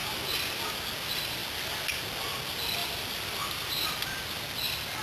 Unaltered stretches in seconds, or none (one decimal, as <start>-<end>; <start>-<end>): 0.0-2.8; 3.9-5.0